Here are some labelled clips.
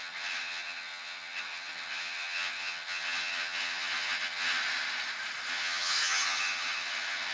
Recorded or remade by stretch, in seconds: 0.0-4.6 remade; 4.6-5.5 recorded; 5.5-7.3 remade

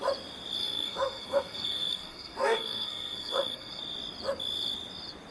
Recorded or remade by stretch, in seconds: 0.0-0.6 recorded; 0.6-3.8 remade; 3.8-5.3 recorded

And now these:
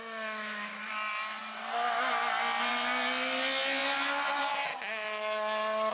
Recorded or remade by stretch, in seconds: 0.0-0.9 remade; 0.9-5.9 recorded